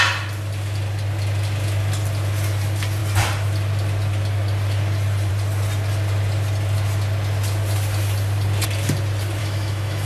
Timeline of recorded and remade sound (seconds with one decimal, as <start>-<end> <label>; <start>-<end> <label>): 0.0-9.4 recorded; 9.4-10.1 remade